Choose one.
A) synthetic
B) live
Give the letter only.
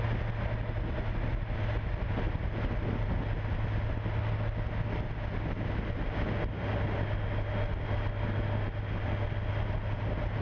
B